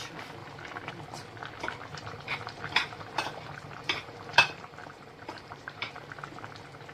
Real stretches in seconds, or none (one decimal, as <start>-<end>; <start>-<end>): 0.0-1.9; 6.0-6.9